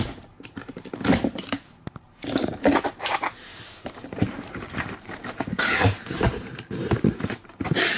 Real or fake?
fake